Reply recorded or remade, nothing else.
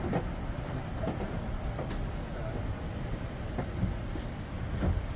recorded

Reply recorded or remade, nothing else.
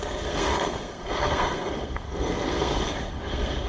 remade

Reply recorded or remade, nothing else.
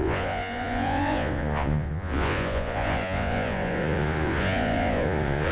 remade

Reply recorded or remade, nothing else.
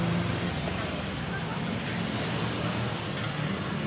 recorded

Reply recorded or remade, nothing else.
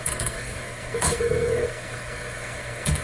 remade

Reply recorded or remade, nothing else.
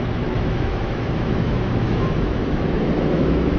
remade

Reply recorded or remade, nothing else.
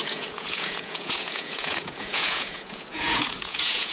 remade